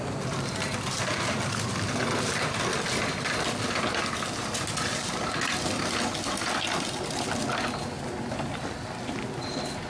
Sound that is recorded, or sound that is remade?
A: recorded